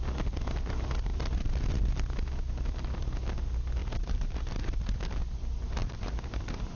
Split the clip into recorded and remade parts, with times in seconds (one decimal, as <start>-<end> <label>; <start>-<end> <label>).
0.0-3.8 recorded; 3.8-4.5 remade; 4.5-5.8 recorded; 5.8-6.8 remade